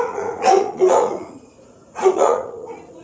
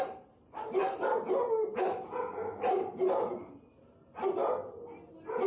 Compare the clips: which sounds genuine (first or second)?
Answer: second